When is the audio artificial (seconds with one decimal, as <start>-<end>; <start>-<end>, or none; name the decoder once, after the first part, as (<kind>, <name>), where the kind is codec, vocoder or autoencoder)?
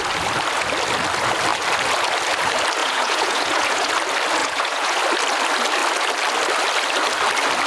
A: 2.8-3.9 (vocoder, Vocos); 4.4-5.0